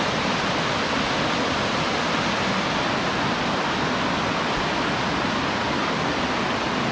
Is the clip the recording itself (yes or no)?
yes